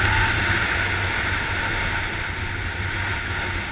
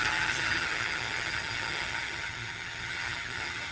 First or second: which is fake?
second